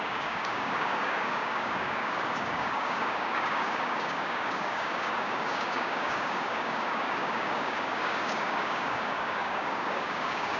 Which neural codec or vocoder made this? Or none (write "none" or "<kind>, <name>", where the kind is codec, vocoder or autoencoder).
codec, DAC